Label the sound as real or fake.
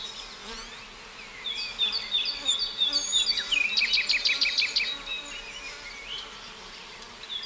real